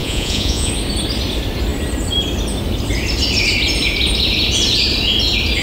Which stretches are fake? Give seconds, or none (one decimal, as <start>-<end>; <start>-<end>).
0.0-0.7